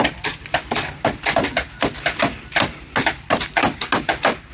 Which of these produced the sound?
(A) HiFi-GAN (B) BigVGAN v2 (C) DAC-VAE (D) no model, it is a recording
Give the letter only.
D